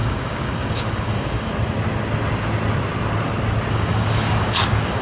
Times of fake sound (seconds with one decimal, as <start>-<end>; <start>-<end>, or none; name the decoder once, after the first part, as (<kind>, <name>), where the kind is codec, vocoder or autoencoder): 0.0-1.5 (codec, DAC); 3.7-5.0